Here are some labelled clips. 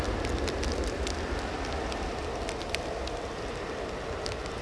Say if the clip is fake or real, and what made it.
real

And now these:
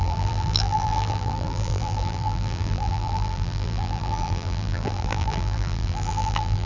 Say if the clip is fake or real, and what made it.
fake, vocoder, BigVGAN v2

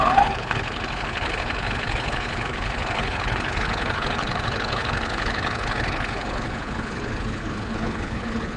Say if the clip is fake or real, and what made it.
fake, codec, HILCodec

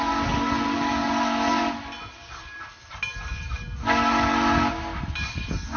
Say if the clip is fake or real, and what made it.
real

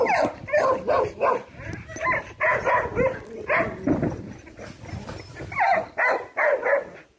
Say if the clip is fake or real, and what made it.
real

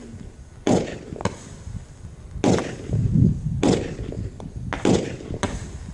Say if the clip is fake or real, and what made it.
real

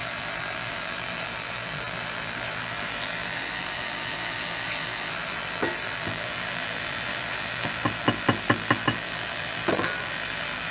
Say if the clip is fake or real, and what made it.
fake, vocoder, BigVGAN v2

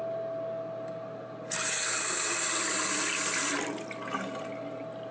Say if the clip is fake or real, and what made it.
real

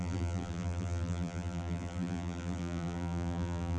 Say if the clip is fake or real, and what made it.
fake, vocoder, BigVGAN v2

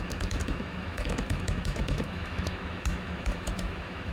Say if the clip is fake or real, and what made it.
fake, autoencoder, DAC-VAE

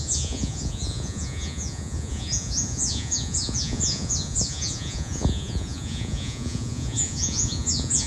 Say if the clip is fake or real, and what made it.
fake, vocoder, Vocos